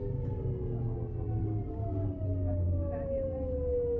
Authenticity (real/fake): real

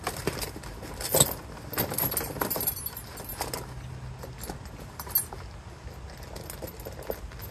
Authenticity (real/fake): real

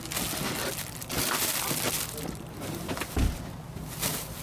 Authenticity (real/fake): real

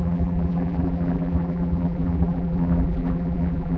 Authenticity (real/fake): fake